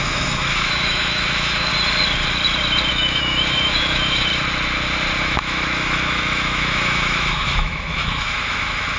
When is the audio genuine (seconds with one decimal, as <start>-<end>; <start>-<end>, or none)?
1.7-2.9; 4.3-5.2